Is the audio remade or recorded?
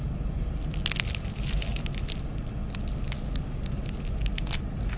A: recorded